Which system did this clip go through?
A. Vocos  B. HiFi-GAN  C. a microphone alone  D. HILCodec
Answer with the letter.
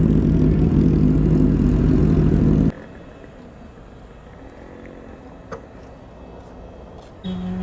C